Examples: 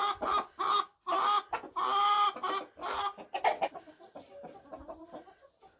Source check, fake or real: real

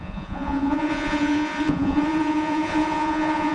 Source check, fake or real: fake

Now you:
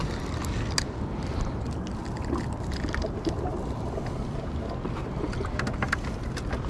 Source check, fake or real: real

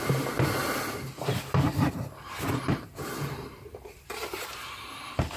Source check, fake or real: real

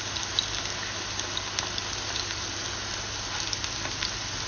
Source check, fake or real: real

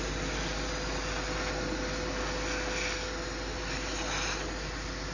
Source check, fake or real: real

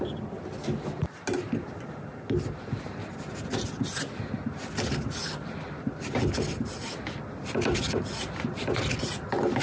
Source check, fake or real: real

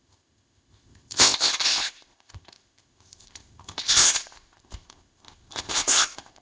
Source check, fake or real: fake